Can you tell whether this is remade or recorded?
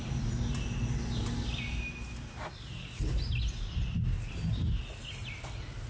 recorded